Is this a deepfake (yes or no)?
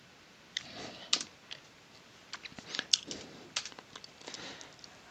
no